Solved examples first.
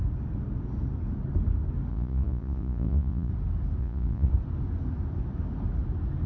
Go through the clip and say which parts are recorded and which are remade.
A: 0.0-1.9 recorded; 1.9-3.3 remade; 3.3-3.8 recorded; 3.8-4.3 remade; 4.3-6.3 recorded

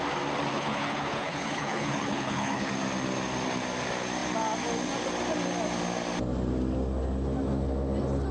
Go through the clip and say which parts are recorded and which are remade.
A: 0.0-0.5 recorded; 0.5-2.7 remade; 2.7-8.3 recorded

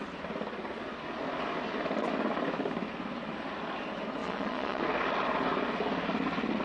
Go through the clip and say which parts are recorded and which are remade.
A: 0.0-4.2 recorded; 4.2-4.8 remade; 4.8-6.6 recorded

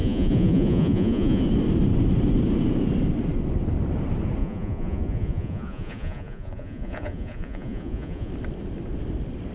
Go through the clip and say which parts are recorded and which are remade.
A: 0.0-1.4 remade; 1.4-4.4 recorded; 4.4-8.3 remade; 8.3-9.5 recorded

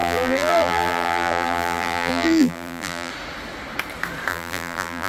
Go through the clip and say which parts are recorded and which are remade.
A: 0.0-3.1 remade; 3.1-4.3 recorded; 4.3-5.1 remade

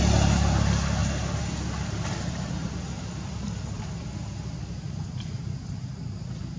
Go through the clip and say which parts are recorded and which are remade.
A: 0.0-6.6 recorded

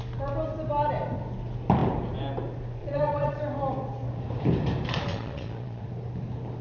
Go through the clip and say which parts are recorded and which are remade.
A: 0.0-2.8 recorded; 2.8-3.4 remade; 3.4-5.1 recorded; 5.1-5.8 remade; 5.8-6.6 recorded

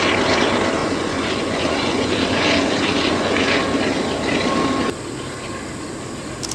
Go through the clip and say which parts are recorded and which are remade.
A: 0.0-0.8 recorded; 0.8-3.6 remade; 3.6-6.5 recorded